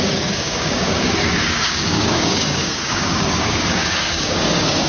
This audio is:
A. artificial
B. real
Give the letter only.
A